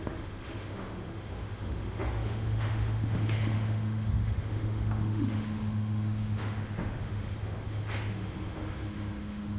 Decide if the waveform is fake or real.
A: fake